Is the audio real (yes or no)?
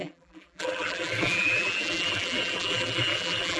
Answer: no